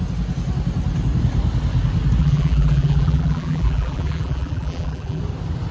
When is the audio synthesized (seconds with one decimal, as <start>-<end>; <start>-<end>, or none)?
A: 2.2-5.2